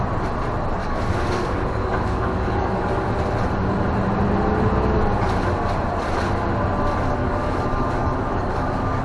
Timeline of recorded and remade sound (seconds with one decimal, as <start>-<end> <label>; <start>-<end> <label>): 0.0-0.8 recorded; 0.8-2.8 remade; 2.8-7.2 recorded; 7.2-9.0 remade